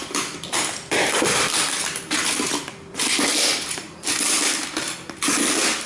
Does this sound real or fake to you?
real